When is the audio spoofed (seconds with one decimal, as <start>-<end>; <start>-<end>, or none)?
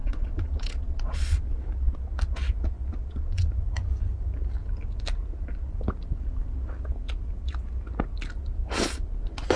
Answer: 0.0-1.4; 2.9-3.5